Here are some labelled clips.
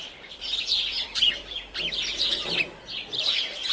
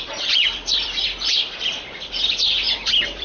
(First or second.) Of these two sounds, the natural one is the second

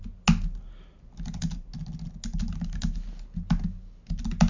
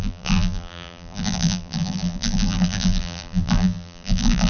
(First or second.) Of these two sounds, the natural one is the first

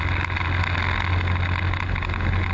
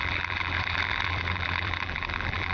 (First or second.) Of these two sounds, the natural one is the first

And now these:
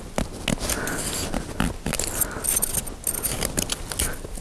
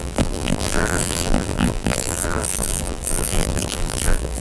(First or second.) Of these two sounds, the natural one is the first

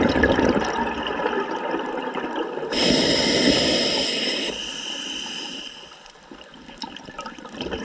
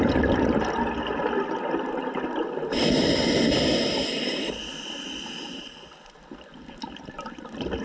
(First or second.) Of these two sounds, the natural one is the second